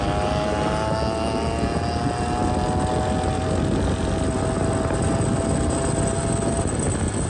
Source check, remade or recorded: recorded